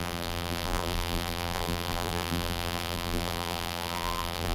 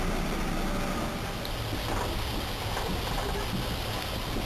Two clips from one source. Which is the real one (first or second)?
second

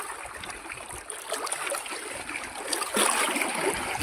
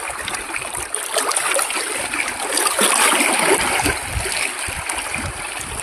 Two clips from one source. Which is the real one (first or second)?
first